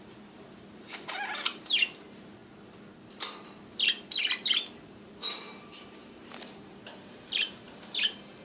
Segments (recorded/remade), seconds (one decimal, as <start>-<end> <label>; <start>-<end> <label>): 0.0-2.4 remade; 2.4-4.8 recorded; 4.8-8.4 remade